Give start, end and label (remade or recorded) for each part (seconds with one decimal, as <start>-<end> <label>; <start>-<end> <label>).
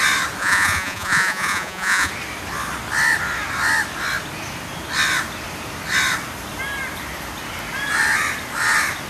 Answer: 0.0-0.4 recorded; 0.4-2.1 remade; 2.1-9.1 recorded